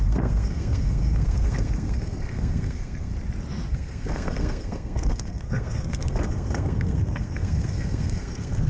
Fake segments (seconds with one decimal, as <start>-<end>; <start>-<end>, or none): 0.0-3.1; 3.7-8.7